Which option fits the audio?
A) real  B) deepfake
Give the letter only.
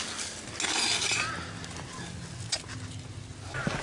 A